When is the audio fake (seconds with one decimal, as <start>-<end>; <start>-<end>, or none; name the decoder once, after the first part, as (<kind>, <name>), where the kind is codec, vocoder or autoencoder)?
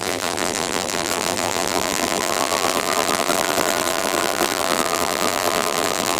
0.0-6.2 (vocoder, BigVGAN v2)